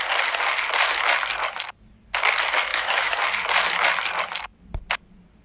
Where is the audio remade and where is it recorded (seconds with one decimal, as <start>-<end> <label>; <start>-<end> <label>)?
0.0-2.7 recorded; 2.7-3.2 remade; 3.2-5.4 recorded